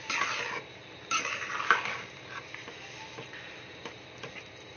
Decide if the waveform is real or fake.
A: real